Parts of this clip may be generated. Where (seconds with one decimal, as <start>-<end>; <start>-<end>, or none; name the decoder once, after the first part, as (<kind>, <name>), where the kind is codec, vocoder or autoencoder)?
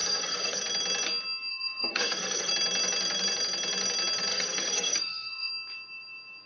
0.0-0.6 (codec, SNAC); 1.5-2.5; 4.3-5.5